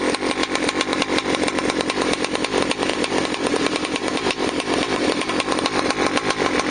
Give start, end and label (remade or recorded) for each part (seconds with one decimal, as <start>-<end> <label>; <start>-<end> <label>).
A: 0.0-2.9 recorded; 2.9-5.3 remade; 5.3-6.7 recorded